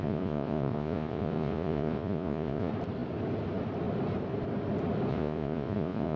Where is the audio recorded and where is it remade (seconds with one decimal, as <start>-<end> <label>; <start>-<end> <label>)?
0.0-2.7 remade; 2.7-5.1 recorded; 5.1-6.2 remade